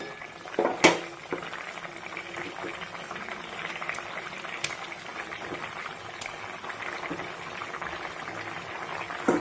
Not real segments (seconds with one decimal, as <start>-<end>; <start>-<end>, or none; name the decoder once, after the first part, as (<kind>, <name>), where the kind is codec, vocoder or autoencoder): none